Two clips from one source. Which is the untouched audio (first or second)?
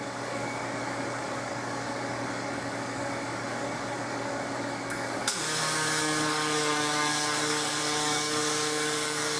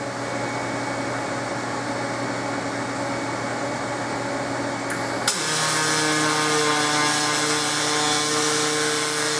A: second